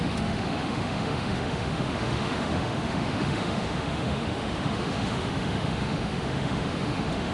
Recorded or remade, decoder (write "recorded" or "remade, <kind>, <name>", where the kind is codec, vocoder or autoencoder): remade, autoencoder, DAC-VAE